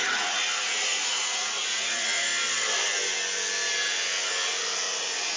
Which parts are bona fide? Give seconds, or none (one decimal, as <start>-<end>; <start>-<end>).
2.3-5.4